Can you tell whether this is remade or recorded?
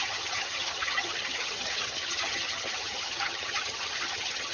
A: remade